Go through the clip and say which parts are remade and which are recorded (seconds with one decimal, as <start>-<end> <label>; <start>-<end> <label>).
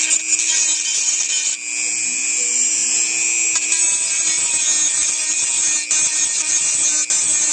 0.0-7.5 recorded